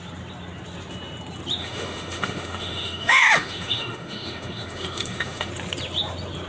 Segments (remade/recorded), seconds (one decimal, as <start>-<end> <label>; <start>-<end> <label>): 0.0-1.6 recorded; 1.6-5.5 remade; 5.5-6.5 recorded